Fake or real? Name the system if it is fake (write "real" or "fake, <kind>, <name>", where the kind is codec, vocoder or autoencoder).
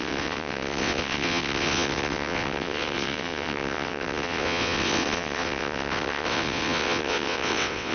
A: fake, vocoder, WaveNeXt